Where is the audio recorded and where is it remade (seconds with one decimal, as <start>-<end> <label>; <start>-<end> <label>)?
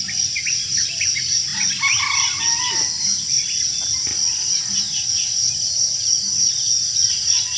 0.0-7.6 recorded